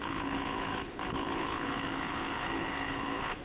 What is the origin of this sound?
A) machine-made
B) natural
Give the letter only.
A